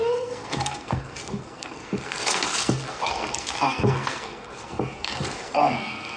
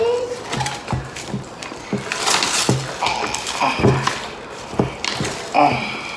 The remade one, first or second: first